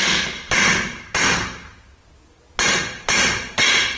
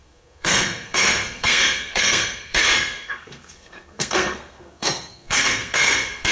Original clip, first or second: first